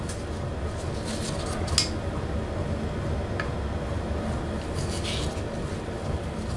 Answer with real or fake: real